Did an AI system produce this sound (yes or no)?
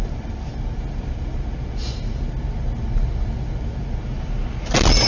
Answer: no